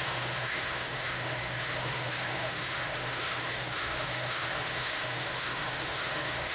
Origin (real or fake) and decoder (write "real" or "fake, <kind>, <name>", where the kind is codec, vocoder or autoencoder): fake, autoencoder, DAC-VAE